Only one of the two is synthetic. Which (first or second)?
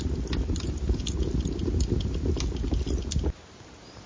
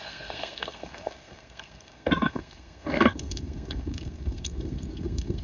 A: second